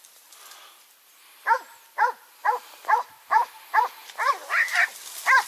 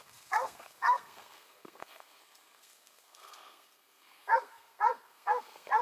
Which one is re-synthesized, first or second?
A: second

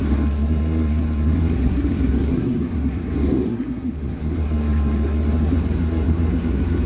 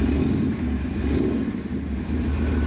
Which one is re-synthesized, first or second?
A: first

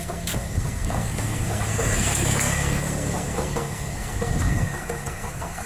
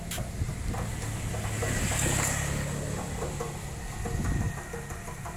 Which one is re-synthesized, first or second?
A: first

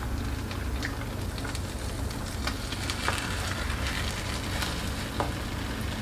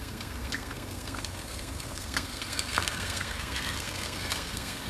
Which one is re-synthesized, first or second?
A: second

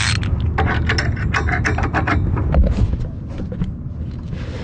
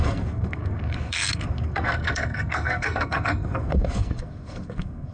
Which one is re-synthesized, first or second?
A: second